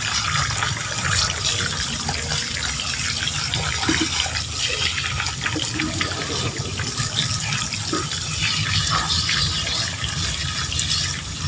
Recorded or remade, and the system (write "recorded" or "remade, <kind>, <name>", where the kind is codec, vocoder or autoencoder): recorded